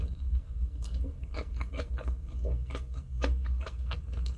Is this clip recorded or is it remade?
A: remade